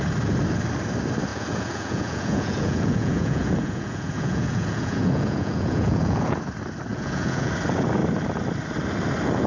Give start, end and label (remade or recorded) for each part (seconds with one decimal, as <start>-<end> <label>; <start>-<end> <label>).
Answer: 0.0-1.3 recorded; 1.3-6.4 remade; 6.4-6.9 recorded; 6.9-7.5 remade; 7.5-9.5 recorded